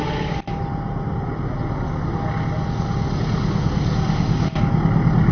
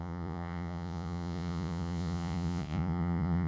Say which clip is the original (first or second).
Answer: first